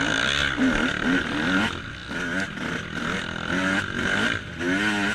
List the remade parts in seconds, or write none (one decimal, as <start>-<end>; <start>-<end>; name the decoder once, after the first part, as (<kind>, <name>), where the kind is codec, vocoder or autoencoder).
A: none